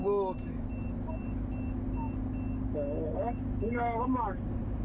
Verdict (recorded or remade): recorded